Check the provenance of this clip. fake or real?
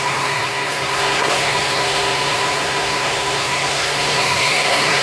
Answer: fake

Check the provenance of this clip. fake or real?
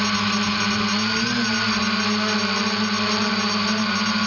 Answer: real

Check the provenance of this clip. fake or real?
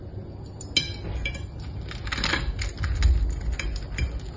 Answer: real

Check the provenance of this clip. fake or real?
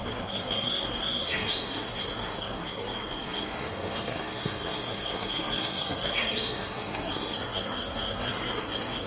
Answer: fake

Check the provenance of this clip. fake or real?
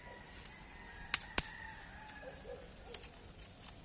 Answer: real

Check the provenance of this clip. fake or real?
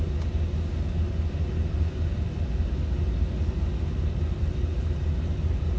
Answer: real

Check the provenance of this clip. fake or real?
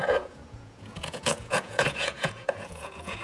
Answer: fake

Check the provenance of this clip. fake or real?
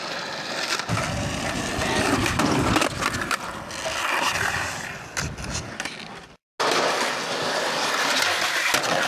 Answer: real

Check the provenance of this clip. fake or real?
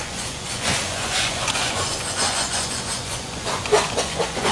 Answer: fake